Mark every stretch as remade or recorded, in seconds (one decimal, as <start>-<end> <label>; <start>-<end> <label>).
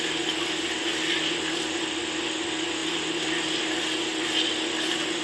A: 0.0-5.2 recorded